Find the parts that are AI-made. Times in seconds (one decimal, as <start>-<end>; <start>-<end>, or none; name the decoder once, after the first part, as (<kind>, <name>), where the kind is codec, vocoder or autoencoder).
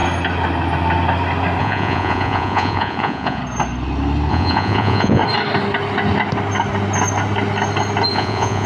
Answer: 1.6-3.4 (vocoder, Vocos); 4.3-5.2; 8.1-8.7